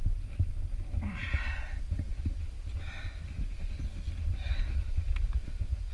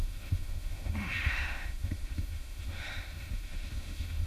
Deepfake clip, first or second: second